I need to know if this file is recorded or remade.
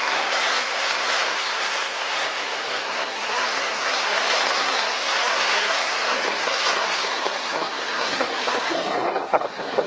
remade